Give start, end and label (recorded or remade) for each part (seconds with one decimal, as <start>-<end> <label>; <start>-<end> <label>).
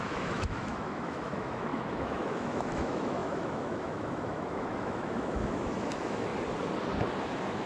0.0-6.3 remade; 6.3-7.2 recorded; 7.2-7.7 remade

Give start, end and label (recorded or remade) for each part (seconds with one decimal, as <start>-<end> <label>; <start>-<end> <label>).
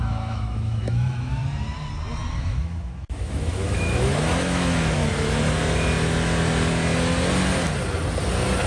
0.0-1.4 remade; 1.4-2.3 recorded; 2.3-5.0 remade; 5.0-8.7 recorded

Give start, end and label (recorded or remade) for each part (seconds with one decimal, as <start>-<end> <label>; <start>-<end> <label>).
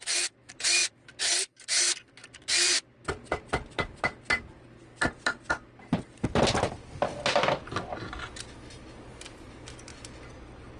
0.0-10.8 recorded